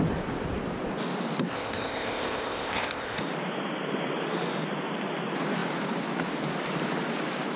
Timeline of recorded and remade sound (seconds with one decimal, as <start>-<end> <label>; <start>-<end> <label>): 0.0-1.5 recorded; 1.5-3.2 remade; 3.2-7.6 recorded